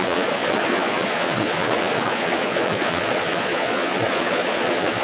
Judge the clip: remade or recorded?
remade